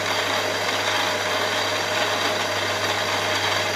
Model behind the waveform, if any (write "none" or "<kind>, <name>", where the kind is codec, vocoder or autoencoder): none